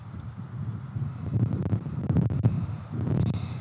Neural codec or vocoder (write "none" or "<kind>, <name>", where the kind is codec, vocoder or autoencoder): none